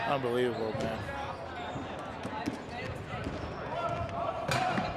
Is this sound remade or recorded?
recorded